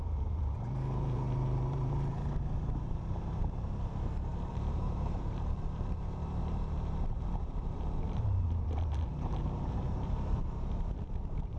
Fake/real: fake